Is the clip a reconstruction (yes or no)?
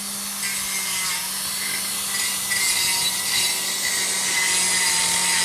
no